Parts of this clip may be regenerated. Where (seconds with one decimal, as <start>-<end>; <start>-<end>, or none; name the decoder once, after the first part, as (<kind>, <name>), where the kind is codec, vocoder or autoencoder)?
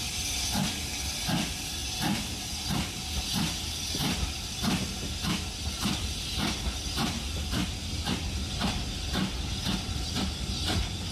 none